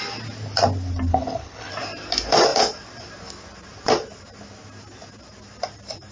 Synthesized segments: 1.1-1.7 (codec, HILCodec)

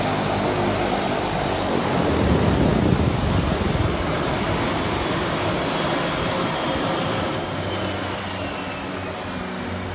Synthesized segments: none

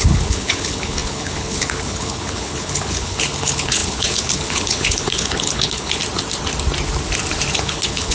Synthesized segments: 0.0-6.0 (codec, HILCodec); 7.5-8.1

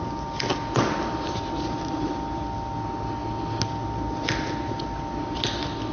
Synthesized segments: none